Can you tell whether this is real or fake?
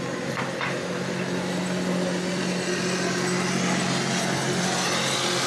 real